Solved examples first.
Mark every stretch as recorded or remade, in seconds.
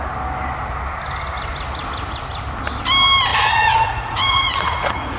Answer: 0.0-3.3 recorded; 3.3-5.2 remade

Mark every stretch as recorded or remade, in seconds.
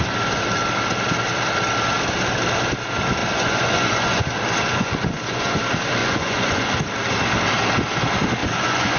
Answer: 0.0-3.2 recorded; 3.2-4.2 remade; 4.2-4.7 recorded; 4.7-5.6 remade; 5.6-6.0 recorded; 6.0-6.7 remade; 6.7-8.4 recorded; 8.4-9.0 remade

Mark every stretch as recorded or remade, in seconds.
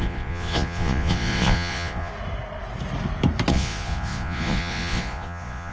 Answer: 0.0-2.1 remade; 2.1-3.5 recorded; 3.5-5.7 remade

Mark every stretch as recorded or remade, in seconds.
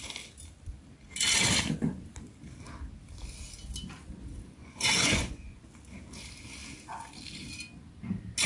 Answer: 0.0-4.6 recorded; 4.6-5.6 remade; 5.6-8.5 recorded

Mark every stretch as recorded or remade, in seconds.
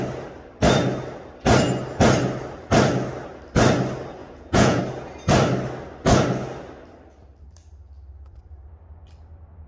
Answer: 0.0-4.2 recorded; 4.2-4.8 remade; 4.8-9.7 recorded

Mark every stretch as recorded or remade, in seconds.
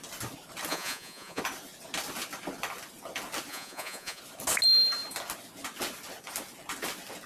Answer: 0.0-0.7 recorded; 0.7-1.4 remade; 1.4-3.5 recorded; 3.5-4.2 remade; 4.2-7.3 recorded